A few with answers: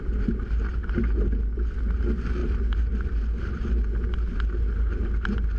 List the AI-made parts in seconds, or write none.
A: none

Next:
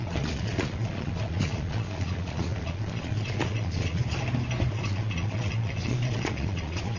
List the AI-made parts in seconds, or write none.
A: 0.0-4.0; 4.7-7.0

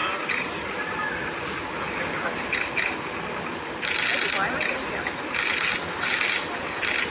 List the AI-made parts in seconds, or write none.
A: none

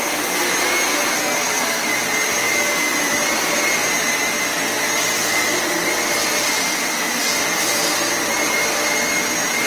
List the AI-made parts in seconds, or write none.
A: 1.2-1.8

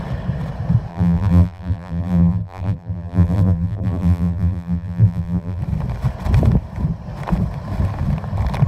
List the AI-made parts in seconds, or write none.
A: 0.9-5.6

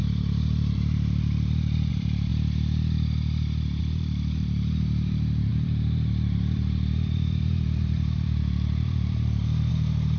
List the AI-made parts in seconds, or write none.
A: 0.0-2.3; 3.8-10.2

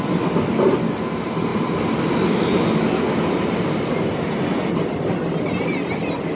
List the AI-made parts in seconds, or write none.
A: none

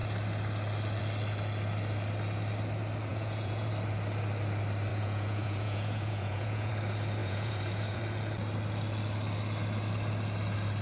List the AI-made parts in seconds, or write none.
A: 3.1-3.7; 4.9-6.7; 7.2-8.0